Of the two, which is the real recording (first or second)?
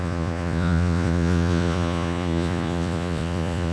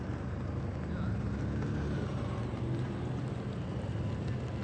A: second